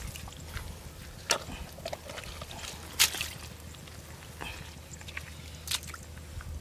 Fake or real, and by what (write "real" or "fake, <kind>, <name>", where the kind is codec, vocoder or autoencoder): real